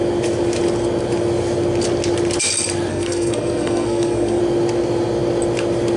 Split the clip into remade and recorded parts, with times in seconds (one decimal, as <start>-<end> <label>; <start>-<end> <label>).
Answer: 0.0-2.9 recorded; 2.9-4.4 remade; 4.4-6.0 recorded